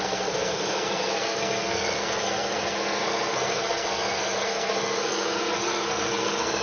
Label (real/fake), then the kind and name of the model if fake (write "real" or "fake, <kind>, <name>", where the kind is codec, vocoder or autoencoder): fake, codec, SNAC